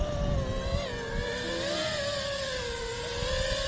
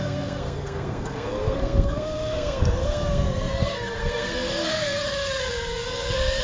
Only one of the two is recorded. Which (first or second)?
first